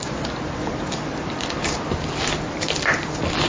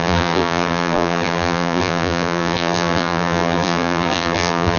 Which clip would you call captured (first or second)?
first